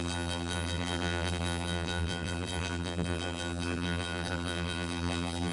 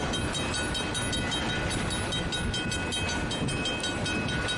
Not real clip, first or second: first